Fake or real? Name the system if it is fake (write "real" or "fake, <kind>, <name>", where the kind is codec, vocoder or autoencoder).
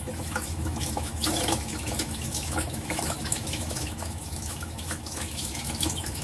fake, autoencoder, DAC-VAE